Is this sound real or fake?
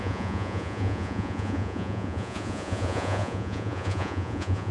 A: fake